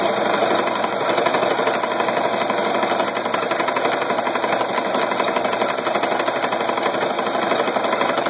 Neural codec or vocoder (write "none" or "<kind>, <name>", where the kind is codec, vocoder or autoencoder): none